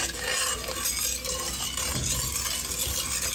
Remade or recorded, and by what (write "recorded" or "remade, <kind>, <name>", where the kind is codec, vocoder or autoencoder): recorded